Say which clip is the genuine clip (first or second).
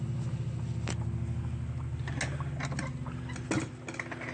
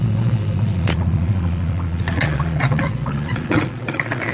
first